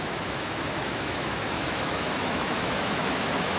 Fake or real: fake